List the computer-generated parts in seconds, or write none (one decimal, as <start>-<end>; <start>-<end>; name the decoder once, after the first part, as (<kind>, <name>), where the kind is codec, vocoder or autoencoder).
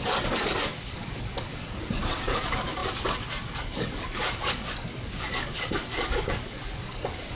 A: 0.0-7.4 (codec, DAC)